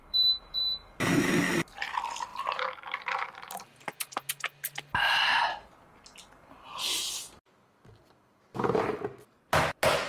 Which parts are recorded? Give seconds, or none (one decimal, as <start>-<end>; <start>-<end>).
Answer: 1.3-10.1

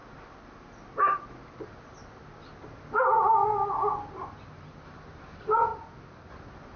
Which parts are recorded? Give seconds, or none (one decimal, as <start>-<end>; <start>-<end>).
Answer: 0.0-6.8

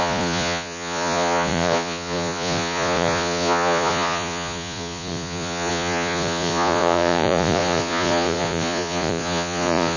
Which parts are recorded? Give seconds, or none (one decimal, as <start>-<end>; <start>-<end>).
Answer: none

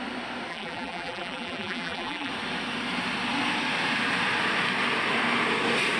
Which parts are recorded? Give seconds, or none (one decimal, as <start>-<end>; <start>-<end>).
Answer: 0.0-0.5; 2.3-6.0

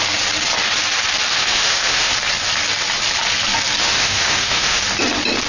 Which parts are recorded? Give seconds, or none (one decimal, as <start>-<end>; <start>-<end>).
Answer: 0.0-1.3; 2.1-3.8; 4.8-5.5

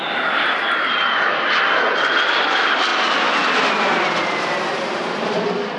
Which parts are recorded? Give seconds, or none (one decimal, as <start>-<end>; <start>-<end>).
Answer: 0.0-5.8